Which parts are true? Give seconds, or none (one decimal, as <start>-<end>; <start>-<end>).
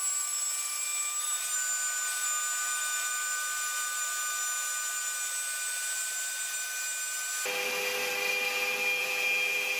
0.0-9.0